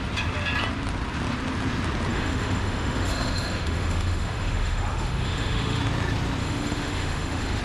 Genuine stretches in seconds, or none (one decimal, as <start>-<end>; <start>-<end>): 0.0-2.1; 5.8-6.4